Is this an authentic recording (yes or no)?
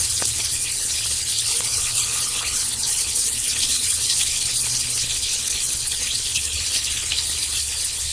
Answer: no